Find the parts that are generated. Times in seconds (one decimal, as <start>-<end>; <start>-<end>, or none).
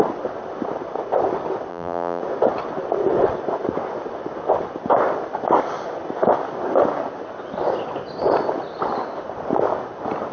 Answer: 1.7-2.2